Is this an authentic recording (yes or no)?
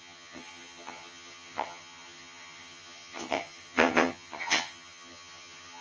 no